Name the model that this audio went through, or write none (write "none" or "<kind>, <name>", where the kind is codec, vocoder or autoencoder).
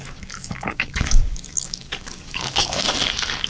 codec, DAC